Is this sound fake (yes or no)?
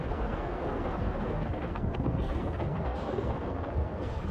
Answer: yes